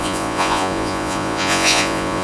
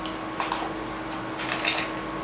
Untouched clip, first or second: second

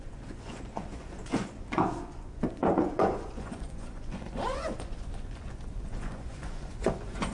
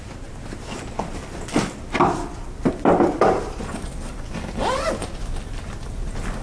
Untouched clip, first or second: second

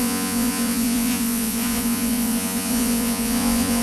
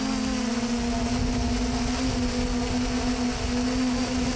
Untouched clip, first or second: second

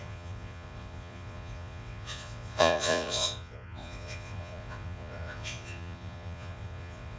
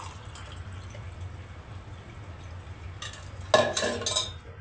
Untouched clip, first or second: second